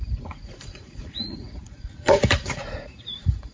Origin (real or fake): fake